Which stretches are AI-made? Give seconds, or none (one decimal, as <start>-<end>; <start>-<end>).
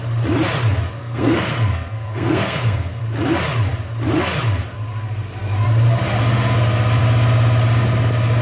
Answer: 1.0-3.0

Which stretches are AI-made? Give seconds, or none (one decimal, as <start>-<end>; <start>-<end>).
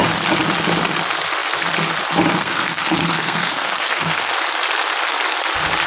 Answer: 2.4-4.3